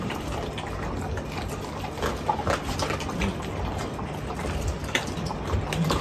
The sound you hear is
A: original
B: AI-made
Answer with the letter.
A